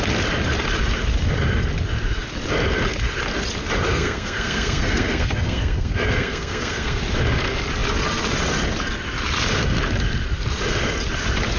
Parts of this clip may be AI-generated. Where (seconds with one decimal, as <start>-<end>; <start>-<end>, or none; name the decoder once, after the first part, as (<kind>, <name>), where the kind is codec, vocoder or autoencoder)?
3.9-7.0 (codec, SNAC)